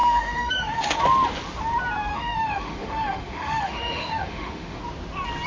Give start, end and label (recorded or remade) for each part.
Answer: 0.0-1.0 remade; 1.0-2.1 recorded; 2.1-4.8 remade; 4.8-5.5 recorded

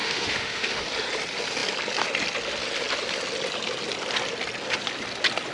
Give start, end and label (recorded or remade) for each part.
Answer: 0.0-0.8 remade; 0.8-5.5 recorded

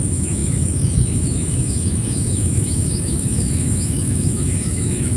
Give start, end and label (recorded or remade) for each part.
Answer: 0.0-5.2 remade

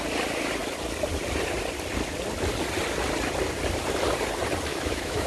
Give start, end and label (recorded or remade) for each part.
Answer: 0.0-4.7 recorded; 4.7-5.3 remade

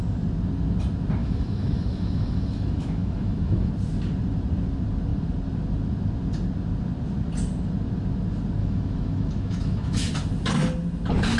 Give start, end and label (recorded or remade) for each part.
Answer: 0.0-1.2 recorded; 1.2-3.7 remade; 3.7-8.6 recorded; 8.6-10.1 remade; 10.1-11.4 recorded

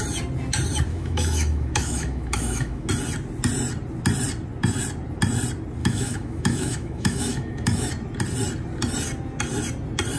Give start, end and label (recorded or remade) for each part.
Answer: 0.0-0.9 recorded; 0.9-2.9 remade; 2.9-5.8 recorded; 5.8-7.9 remade; 7.9-10.2 recorded

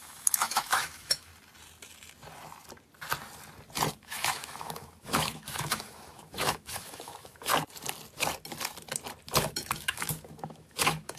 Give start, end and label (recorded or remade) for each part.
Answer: 0.0-1.3 remade; 1.3-3.9 recorded; 3.9-7.5 remade; 7.5-9.4 recorded; 9.4-11.2 remade

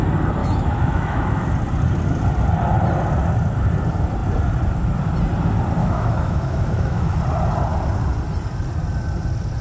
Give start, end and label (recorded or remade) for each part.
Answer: 0.0-0.4 recorded; 0.4-1.5 remade; 1.5-5.8 recorded; 5.8-7.2 remade; 7.2-9.6 recorded